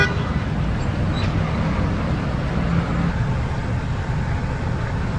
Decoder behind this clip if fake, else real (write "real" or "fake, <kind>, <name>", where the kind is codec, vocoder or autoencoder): real